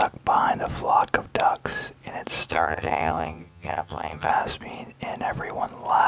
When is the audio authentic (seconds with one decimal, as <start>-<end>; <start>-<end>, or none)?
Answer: 0.0-2.5; 4.3-6.1